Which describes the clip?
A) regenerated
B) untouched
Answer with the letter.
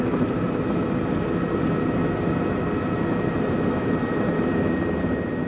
A